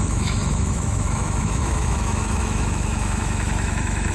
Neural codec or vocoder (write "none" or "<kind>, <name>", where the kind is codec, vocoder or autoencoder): autoencoder, DAC-VAE